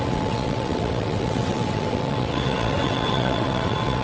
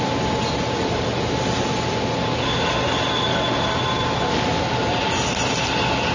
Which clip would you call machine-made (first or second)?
first